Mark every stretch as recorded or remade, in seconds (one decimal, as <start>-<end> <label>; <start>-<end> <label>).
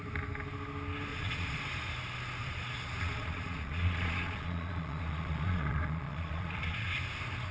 0.0-1.1 recorded; 1.1-1.6 remade; 1.6-2.4 recorded; 2.4-6.9 remade; 6.9-7.5 recorded